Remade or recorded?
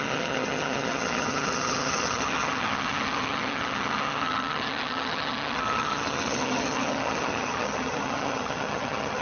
remade